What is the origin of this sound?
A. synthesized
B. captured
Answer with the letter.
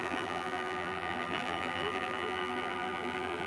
A